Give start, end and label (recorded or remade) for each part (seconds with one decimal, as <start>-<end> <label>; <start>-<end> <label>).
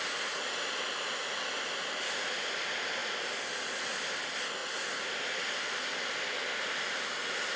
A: 0.0-7.6 recorded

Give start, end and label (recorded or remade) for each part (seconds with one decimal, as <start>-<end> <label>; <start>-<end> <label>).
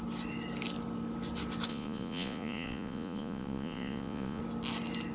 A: 0.0-1.7 recorded; 1.7-4.4 remade; 4.4-5.1 recorded